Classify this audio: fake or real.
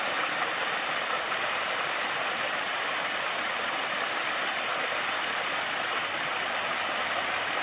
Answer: real